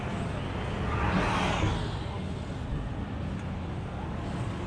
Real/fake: real